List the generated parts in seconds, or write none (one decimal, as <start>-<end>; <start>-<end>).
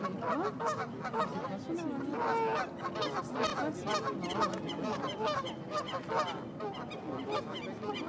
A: none